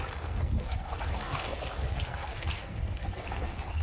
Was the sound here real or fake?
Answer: fake